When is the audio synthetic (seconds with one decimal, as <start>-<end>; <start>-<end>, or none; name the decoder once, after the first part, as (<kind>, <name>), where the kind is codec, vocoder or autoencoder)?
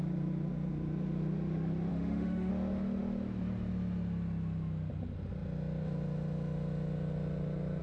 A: 1.9-2.5 (autoencoder, DAC-VAE)